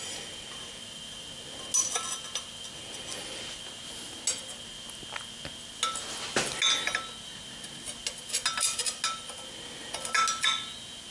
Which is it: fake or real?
real